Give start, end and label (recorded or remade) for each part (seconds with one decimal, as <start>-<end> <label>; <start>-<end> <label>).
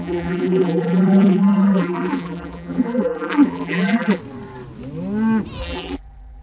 0.0-4.2 remade; 4.2-5.6 recorded; 5.6-6.4 remade